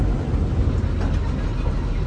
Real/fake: real